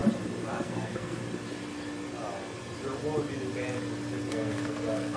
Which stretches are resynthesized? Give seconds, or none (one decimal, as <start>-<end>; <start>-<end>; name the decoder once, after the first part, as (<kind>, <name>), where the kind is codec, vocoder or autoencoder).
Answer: 0.5-1.2 (codec, SNAC); 4.3-5.2